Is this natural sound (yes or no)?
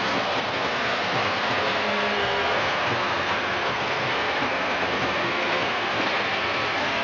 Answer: no